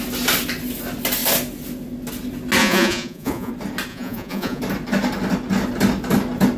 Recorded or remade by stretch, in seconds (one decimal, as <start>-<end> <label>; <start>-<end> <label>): 0.0-2.6 recorded; 2.6-3.5 remade; 3.5-3.9 recorded; 3.9-4.6 remade; 4.6-6.6 recorded